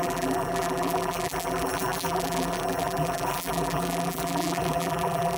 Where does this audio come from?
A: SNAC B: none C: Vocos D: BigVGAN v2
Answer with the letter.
D